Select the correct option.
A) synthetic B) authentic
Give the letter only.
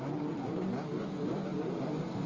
B